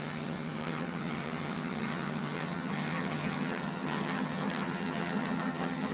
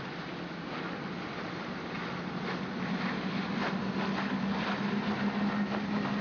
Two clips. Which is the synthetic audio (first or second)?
first